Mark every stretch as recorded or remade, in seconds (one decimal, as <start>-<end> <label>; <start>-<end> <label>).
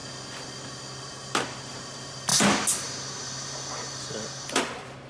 0.0-1.0 recorded; 1.0-2.3 remade; 2.3-3.2 recorded; 3.2-5.1 remade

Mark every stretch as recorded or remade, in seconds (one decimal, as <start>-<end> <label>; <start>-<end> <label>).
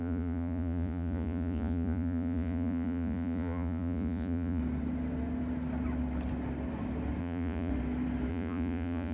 0.0-4.6 remade; 4.6-7.2 recorded; 7.2-7.7 remade; 7.7-8.3 recorded; 8.3-9.1 remade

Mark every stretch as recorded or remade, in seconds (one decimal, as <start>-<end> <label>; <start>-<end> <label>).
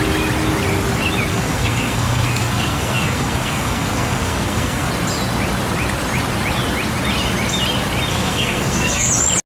0.0-1.3 recorded; 1.3-4.9 remade; 4.9-8.1 recorded; 8.1-9.1 remade; 9.1-9.5 recorded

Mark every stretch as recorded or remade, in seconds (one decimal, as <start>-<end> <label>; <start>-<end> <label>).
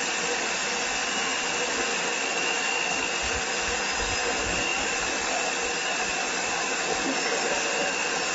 0.0-8.3 recorded